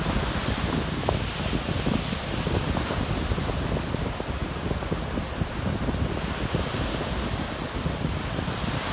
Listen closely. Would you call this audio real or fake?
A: real